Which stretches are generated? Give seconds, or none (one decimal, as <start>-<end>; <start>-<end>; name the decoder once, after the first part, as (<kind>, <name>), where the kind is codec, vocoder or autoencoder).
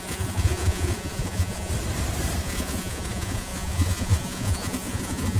0.0-1.7 (vocoder, Vocos); 2.4-5.4